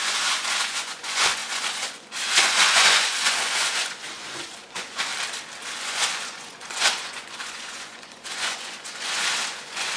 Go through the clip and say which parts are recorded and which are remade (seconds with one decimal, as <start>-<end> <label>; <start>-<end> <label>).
0.0-5.1 remade; 5.1-5.8 recorded; 5.8-10.0 remade